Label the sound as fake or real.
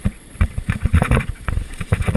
fake